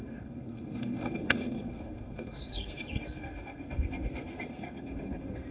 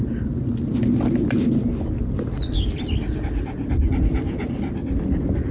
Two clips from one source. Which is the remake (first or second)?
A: first